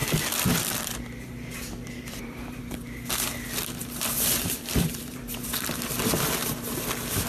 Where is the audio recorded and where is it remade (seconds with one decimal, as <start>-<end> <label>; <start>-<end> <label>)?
0.0-2.6 remade; 2.6-3.8 recorded; 3.8-6.5 remade; 6.5-7.3 recorded